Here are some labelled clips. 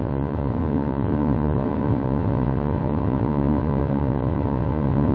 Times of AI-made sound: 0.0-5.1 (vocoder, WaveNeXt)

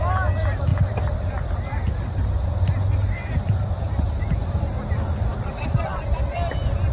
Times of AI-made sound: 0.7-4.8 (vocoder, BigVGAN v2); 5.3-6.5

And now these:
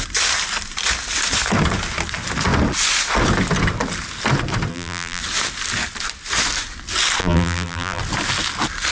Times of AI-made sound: 4.7-5.2 (vocoder, BigVGAN v2); 7.2-8.0